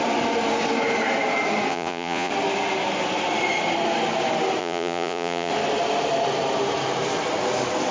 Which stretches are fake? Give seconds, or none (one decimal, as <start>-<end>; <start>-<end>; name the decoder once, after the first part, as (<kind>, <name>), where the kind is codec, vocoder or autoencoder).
1.7-2.3 (vocoder, Vocos); 4.6-5.5